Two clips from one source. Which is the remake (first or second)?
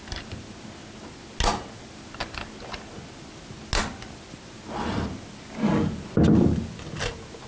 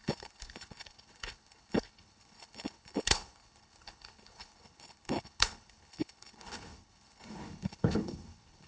second